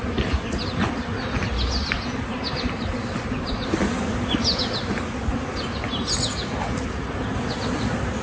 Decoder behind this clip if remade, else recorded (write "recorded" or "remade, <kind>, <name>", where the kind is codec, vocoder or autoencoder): recorded